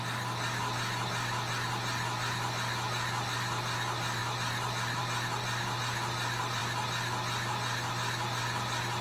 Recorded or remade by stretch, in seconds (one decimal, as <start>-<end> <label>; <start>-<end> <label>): 0.0-9.0 recorded